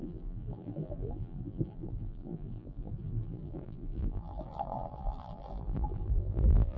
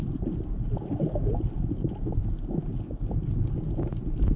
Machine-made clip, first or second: first